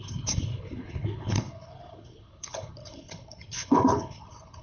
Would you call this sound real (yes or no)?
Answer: no